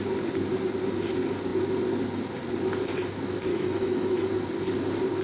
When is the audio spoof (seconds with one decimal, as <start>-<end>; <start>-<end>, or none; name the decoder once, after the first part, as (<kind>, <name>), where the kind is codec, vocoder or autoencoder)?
3.5-4.3 (autoencoder, DAC-VAE)